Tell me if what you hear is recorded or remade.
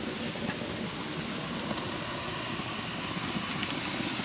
recorded